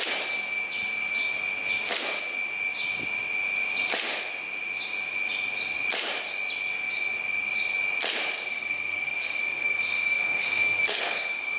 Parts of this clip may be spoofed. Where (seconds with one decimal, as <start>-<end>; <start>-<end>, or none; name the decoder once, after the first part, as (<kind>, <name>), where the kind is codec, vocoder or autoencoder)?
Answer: 8.5-11.6 (codec, SNAC)